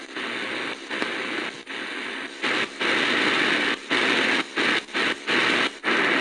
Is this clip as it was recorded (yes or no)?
yes